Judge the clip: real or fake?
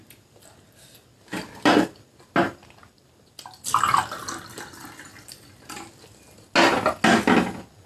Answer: real